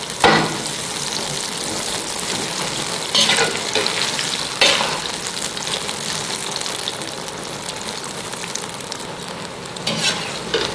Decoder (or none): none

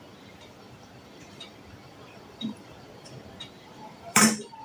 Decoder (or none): vocoder, BigVGAN v2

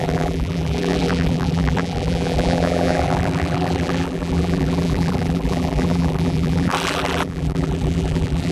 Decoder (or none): vocoder, BigVGAN v2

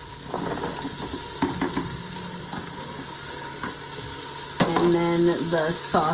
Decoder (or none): none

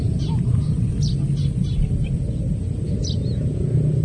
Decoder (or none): none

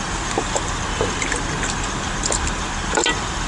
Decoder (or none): vocoder, BigVGAN v2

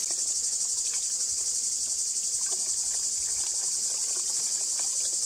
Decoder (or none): none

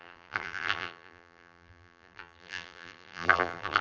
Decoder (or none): vocoder, BigVGAN v2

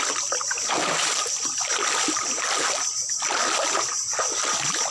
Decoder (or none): vocoder, BigVGAN v2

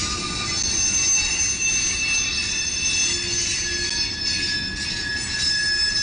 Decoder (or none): none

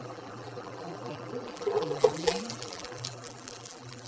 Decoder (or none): vocoder, BigVGAN v2